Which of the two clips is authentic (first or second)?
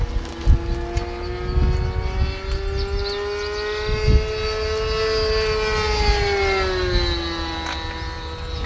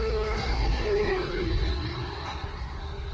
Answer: first